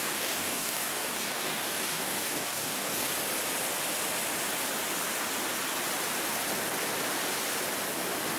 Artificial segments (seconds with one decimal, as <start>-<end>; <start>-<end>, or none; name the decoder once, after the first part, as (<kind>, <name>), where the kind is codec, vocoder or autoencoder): 0.0-3.1 (codec, DAC)